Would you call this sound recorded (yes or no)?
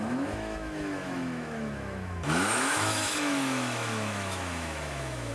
no